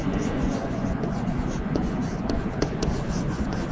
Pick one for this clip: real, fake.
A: fake